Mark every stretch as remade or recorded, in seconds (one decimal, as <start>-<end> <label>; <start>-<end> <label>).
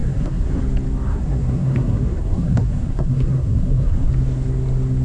0.0-0.6 remade; 0.6-1.1 recorded; 1.1-4.1 remade; 4.1-5.0 recorded